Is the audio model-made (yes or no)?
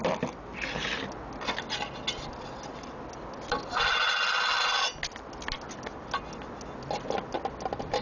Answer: no